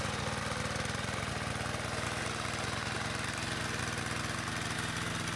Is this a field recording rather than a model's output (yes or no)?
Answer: yes